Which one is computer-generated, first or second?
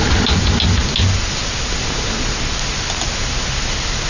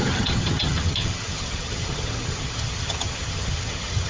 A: second